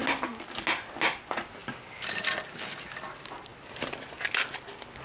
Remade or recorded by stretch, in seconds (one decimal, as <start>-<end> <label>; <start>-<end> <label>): 0.0-5.0 recorded